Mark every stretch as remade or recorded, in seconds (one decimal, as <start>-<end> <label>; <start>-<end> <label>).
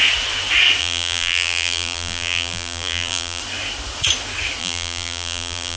0.0-0.8 recorded; 0.8-3.4 remade; 3.4-4.6 recorded; 4.6-5.8 remade